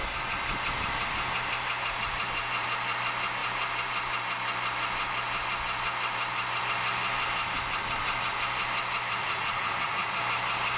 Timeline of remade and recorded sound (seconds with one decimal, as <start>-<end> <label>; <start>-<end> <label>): 0.0-9.2 recorded; 9.2-10.2 remade; 10.2-10.8 recorded